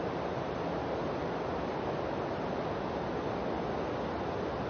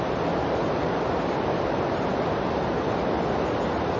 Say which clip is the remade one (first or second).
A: second